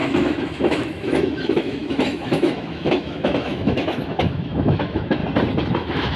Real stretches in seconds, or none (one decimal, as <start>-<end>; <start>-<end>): 5.2-5.7